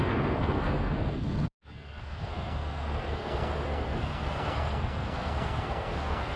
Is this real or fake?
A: fake